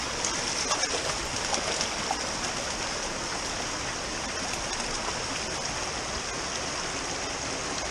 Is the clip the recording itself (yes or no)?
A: yes